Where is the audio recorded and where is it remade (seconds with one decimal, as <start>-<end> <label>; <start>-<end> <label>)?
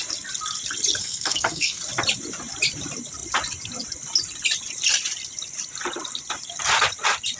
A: 0.0-1.0 recorded; 1.0-1.8 remade; 1.8-7.4 recorded